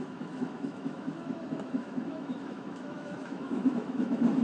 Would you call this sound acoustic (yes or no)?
no